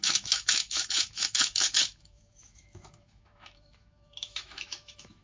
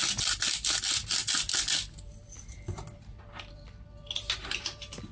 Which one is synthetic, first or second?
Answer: first